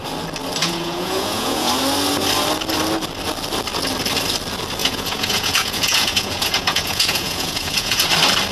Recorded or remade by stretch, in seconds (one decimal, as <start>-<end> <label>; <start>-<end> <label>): 0.0-0.6 recorded; 0.6-1.7 remade; 1.7-4.8 recorded; 4.8-8.1 remade; 8.1-8.5 recorded